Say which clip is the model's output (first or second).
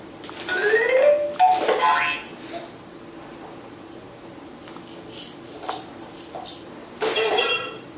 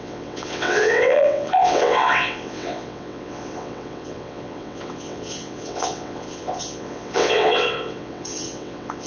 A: second